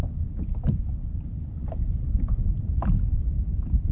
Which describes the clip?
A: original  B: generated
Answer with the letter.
A